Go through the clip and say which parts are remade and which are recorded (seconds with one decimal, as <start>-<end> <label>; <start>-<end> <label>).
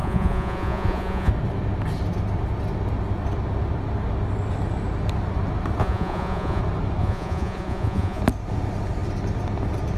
0.0-1.3 remade; 1.3-5.8 recorded; 5.8-6.6 remade; 6.6-7.0 recorded; 7.0-8.2 remade; 8.2-10.0 recorded